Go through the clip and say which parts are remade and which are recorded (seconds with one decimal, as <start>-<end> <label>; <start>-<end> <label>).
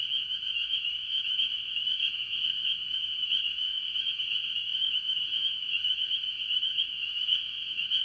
0.0-8.0 remade